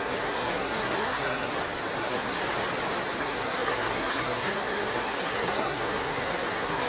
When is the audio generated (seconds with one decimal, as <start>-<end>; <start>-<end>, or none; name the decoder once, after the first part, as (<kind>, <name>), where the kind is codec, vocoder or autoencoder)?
0.0-1.5 (codec, SNAC); 2.0-2.4; 3.2-6.9